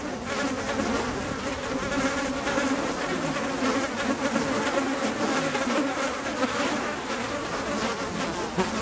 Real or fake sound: real